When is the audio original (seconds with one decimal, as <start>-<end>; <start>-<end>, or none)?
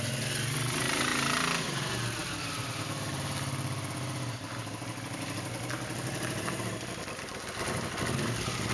0.0-8.7